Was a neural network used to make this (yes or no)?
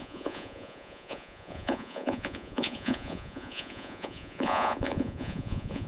yes